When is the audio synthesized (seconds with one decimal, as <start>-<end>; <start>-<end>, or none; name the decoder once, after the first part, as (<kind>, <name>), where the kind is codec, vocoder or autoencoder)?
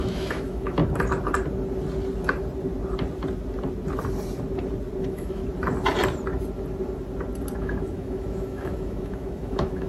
0.0-0.8 (autoencoder, DAC-VAE); 5.0-5.4; 7.6-9.9